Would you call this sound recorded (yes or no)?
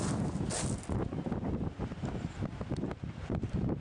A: yes